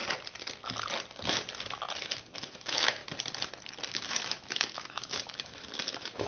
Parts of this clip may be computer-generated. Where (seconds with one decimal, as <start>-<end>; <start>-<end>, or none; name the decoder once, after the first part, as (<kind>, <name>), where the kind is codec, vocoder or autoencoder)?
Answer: 2.0-3.0 (autoencoder, DAC-VAE); 3.9-6.3